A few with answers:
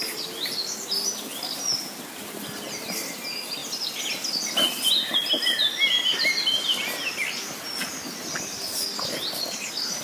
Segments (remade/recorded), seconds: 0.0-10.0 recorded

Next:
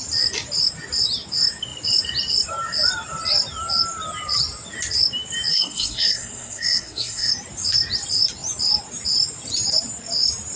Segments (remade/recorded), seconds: 0.0-5.5 recorded; 5.5-7.3 remade; 7.3-10.6 recorded

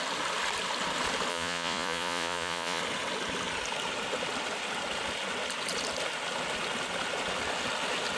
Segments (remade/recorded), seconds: 0.0-1.3 recorded; 1.3-2.8 remade; 2.8-8.2 recorded

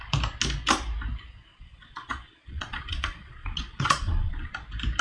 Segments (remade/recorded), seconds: 0.0-1.5 recorded; 1.5-4.5 remade; 4.5-5.0 recorded

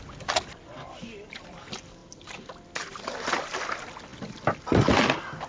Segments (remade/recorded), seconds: 0.0-5.5 recorded

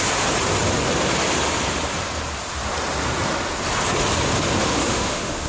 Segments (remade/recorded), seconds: 0.0-4.6 recorded; 4.6-5.5 remade